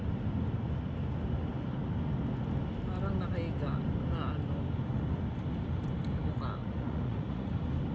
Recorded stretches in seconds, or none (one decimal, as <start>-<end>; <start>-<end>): 0.0-6.6; 7.5-7.9